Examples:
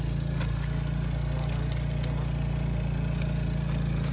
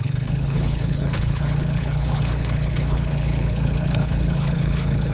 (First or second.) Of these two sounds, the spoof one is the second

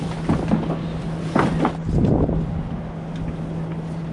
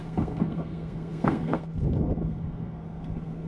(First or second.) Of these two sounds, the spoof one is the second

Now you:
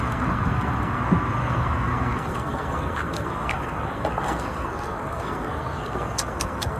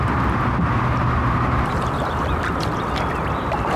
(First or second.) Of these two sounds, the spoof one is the first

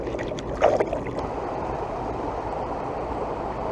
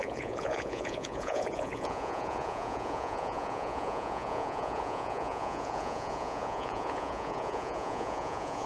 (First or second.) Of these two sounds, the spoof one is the second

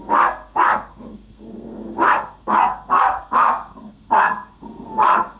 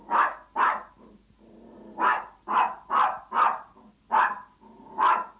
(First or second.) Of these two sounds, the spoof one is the first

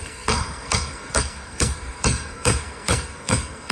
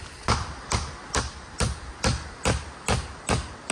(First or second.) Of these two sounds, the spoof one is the first